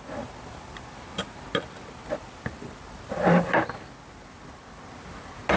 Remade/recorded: recorded